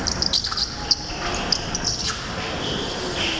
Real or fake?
real